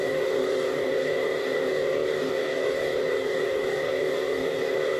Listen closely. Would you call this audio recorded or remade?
remade